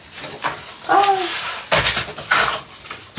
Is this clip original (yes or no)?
yes